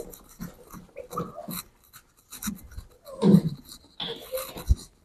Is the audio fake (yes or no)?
no